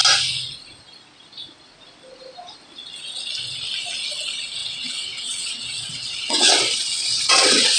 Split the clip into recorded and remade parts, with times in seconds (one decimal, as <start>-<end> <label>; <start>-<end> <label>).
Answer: 0.0-4.6 recorded; 4.6-7.8 remade